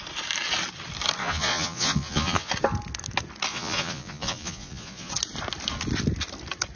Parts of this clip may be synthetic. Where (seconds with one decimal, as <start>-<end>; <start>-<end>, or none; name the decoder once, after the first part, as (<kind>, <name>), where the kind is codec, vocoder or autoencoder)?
1.2-2.5 (vocoder, Vocos); 3.5-5.1